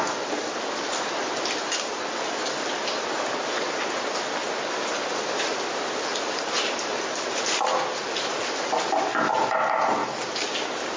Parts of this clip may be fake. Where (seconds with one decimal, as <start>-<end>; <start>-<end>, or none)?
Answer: none